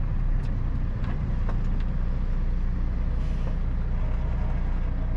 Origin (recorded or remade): recorded